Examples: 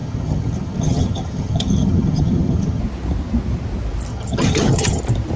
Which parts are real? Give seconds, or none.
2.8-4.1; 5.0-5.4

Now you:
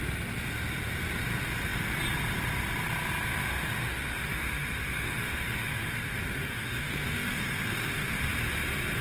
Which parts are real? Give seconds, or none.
0.0-3.3; 8.3-9.0

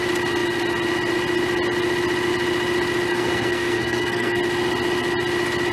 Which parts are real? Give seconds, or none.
0.0-3.1; 4.4-5.7

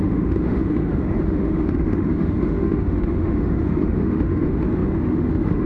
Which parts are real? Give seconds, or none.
none

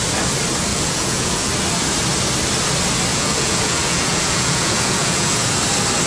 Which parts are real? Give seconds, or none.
0.0-0.7; 1.5-3.1; 5.5-6.1

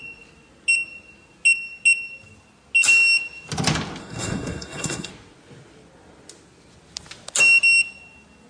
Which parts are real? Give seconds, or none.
0.0-4.0; 5.1-8.5